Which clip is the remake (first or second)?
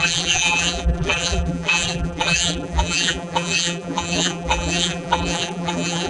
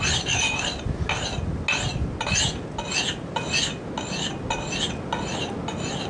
first